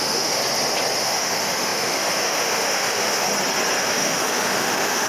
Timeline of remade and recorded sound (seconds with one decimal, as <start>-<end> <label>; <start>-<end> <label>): 0.0-0.4 remade; 0.4-1.0 recorded; 1.0-3.3 remade; 3.3-3.8 recorded; 3.8-5.1 remade